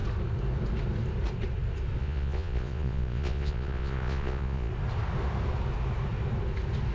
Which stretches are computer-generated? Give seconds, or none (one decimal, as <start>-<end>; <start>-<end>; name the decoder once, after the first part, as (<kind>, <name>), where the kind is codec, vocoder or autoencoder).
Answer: 2.0-4.7 (vocoder, Vocos)